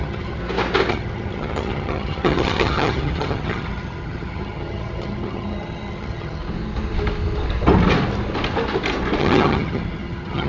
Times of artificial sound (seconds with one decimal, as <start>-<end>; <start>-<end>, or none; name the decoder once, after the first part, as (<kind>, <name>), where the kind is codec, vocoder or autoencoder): 0.0-0.4 (vocoder, HiFi-GAN); 0.9-6.4; 9.2-10.5